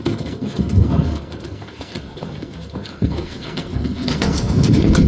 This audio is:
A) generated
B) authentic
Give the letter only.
A